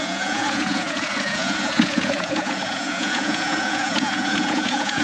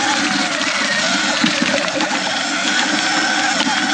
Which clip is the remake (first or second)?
first